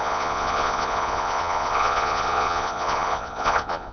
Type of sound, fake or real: fake